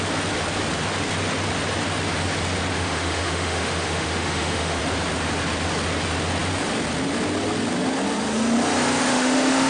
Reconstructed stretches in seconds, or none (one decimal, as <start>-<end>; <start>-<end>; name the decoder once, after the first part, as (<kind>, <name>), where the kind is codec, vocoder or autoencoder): 2.7-4.8 (autoencoder, DAC-VAE); 9.0-9.7